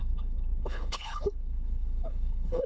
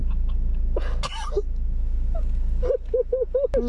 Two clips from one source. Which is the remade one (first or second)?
first